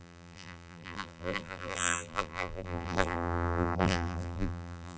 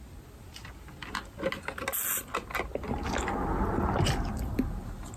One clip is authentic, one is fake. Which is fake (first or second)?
first